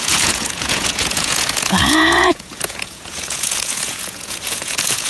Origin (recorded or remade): remade